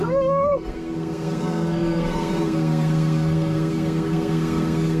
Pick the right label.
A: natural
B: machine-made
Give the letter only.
B